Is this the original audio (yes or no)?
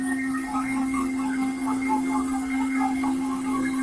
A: no